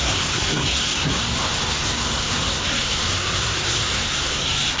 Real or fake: fake